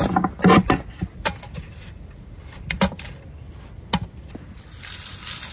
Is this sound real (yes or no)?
yes